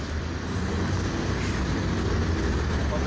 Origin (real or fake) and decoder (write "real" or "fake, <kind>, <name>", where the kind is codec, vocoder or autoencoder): real